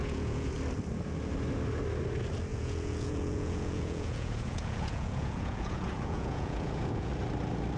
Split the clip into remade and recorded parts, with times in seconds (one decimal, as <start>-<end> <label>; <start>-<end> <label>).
0.0-0.5 remade; 0.5-2.5 recorded; 2.5-7.1 remade; 7.1-7.8 recorded